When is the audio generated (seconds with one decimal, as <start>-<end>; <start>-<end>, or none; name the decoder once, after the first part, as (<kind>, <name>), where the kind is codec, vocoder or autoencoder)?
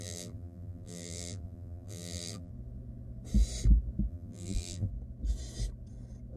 0.0-2.5 (vocoder, BigVGAN v2); 4.1-4.9